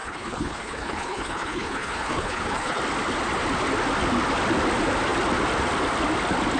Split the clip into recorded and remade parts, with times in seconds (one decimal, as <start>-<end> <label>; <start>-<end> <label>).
0.0-2.8 remade; 2.8-6.6 recorded